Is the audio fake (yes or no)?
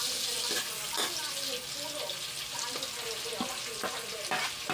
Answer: no